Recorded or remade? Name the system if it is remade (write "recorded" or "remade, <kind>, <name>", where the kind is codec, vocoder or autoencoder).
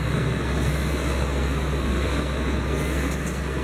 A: remade, codec, SNAC